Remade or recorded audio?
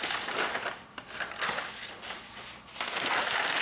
recorded